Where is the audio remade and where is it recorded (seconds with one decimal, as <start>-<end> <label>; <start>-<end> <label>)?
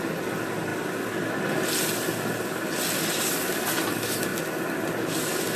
0.0-5.6 recorded